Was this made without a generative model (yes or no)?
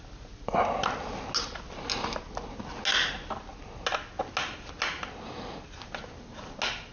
yes